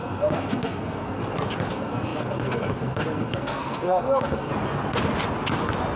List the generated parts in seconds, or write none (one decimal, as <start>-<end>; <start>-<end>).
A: 0.0-1.2; 1.7-4.5

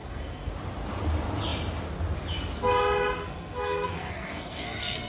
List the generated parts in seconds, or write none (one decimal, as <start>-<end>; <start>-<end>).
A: 0.0-0.5; 3.2-5.1